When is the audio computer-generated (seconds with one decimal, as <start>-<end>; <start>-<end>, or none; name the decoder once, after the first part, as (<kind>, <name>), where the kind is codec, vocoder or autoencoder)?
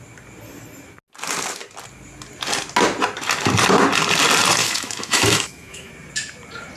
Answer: 4.6-5.9 (autoencoder, DAC-VAE)